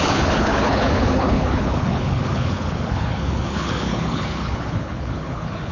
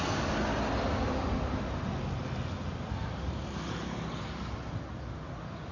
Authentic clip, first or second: second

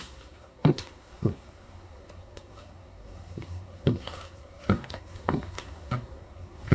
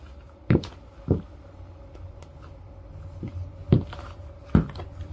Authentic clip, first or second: second